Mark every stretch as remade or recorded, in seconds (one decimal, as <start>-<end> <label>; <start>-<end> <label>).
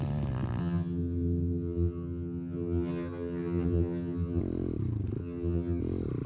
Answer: 0.0-0.6 recorded; 0.6-4.4 remade; 4.4-5.2 recorded; 5.2-5.8 remade; 5.8-6.3 recorded